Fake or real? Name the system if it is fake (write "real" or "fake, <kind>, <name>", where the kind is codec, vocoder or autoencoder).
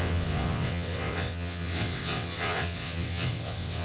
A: fake, vocoder, WaveNeXt